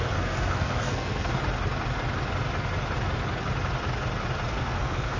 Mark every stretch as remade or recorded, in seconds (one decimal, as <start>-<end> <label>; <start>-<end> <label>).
0.0-1.4 remade; 1.4-4.5 recorded; 4.5-5.2 remade